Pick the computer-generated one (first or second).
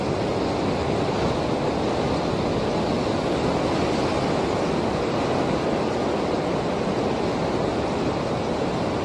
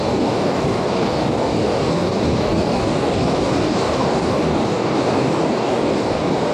second